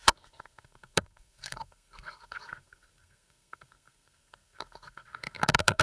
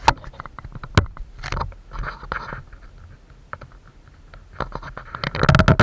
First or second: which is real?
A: second